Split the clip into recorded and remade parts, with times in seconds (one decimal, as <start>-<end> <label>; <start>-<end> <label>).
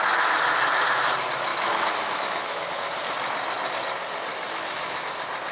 0.0-1.5 recorded; 1.5-2.7 remade; 2.7-4.3 recorded; 4.3-5.1 remade; 5.1-5.5 recorded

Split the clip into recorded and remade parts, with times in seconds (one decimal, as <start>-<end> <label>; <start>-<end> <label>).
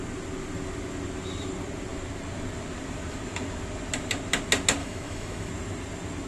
0.0-4.8 recorded; 4.8-5.5 remade; 5.5-6.3 recorded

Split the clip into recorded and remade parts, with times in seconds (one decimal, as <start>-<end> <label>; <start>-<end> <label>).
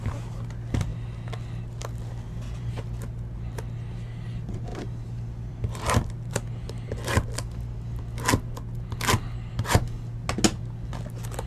0.0-11.5 recorded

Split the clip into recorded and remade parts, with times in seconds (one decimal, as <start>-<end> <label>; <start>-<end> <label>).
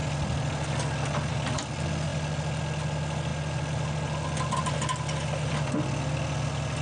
0.0-6.8 recorded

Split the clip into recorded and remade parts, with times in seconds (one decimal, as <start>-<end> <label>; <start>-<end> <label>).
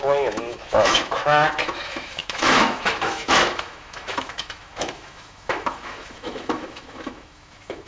0.0-7.9 remade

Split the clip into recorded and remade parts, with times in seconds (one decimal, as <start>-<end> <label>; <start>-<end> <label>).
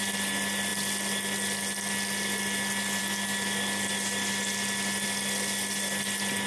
0.0-6.5 recorded